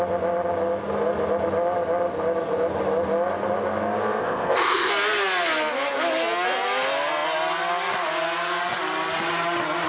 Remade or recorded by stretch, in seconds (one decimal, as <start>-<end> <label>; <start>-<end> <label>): 0.0-4.2 recorded; 4.2-4.9 remade; 4.9-9.9 recorded